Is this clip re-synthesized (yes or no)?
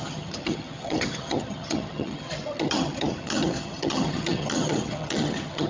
yes